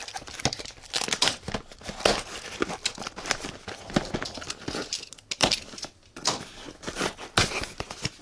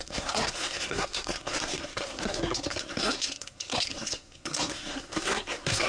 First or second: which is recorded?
first